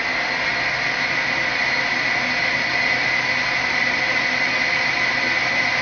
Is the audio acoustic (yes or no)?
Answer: yes